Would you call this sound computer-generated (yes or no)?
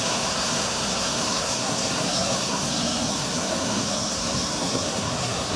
yes